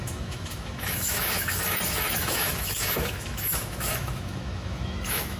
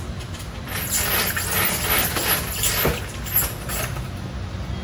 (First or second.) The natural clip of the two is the second